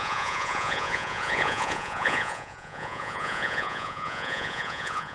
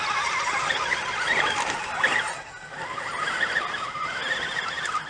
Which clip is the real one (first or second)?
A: second